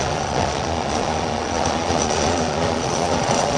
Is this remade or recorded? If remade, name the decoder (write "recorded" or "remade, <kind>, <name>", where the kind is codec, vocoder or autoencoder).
remade, vocoder, Vocos